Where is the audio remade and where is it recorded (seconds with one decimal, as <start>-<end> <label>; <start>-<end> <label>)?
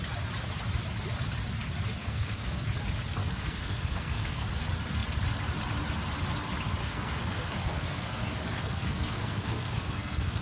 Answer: 0.0-2.0 recorded; 2.0-2.6 remade; 2.6-3.2 recorded; 3.2-4.5 remade; 4.5-6.8 recorded; 6.8-10.4 remade